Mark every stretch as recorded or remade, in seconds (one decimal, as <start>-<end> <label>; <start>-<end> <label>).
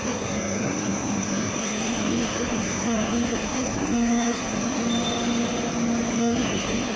0.0-4.8 remade; 4.8-6.1 recorded; 6.1-7.0 remade